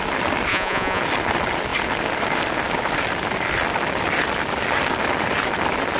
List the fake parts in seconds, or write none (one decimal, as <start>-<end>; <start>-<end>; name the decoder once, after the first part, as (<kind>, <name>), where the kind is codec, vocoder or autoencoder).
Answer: 0.5-1.0 (vocoder, Vocos)